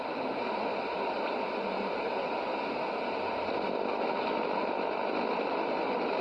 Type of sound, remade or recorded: recorded